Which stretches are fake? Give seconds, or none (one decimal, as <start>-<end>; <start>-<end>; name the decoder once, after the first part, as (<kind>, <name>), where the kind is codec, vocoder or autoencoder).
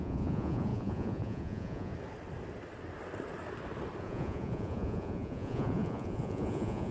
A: 0.0-1.9 (vocoder, Vocos); 4.0-6.9